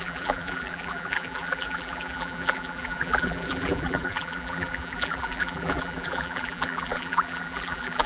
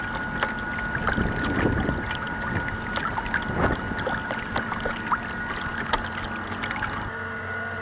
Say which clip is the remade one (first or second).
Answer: first